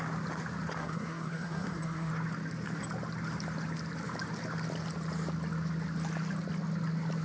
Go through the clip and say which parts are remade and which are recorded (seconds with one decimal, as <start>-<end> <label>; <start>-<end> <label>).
0.0-0.8 recorded; 0.8-2.1 remade; 2.1-7.2 recorded